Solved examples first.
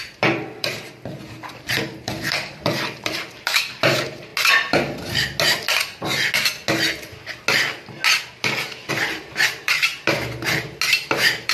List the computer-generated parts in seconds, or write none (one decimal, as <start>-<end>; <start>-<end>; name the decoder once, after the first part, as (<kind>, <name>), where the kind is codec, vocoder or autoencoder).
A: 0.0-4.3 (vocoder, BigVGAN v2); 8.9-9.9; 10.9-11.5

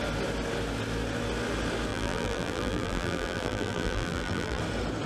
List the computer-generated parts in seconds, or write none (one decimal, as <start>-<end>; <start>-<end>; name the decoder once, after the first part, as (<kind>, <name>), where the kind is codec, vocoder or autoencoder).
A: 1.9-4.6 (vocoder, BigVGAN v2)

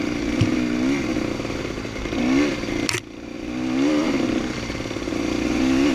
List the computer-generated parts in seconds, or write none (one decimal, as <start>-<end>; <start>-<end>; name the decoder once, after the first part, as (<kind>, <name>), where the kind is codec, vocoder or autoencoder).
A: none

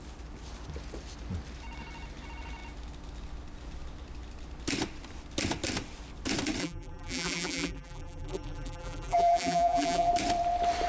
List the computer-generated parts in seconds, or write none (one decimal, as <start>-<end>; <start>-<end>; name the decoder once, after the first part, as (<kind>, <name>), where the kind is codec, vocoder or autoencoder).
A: 6.6-10.1 (vocoder, BigVGAN v2)

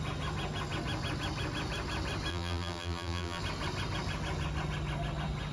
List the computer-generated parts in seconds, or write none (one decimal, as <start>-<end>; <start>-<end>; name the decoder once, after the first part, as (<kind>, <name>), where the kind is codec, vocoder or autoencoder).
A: 2.3-3.4 (vocoder, BigVGAN v2)

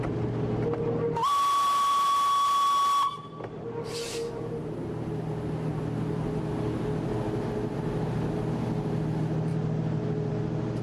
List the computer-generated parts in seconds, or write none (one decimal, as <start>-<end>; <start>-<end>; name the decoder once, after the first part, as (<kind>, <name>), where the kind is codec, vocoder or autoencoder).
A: none